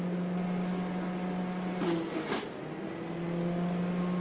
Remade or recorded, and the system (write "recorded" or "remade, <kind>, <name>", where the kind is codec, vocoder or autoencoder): recorded